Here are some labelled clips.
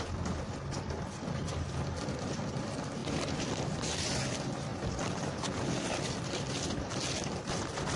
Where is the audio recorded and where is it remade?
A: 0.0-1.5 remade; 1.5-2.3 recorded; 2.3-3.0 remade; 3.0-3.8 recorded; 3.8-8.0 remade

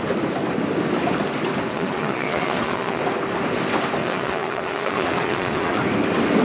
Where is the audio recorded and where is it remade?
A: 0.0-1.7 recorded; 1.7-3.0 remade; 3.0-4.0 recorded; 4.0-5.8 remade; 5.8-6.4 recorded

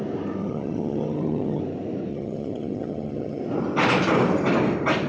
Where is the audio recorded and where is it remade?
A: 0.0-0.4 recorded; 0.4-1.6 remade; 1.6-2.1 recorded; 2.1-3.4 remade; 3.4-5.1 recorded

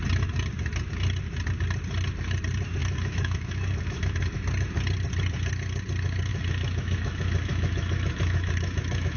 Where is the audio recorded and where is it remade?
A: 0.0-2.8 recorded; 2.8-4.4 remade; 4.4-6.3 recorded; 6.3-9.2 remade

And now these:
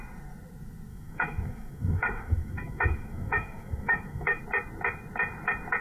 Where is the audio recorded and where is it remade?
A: 0.0-0.9 recorded; 0.9-4.4 remade; 4.4-5.8 recorded

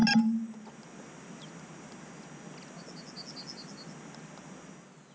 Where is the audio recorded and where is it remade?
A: 0.0-5.1 recorded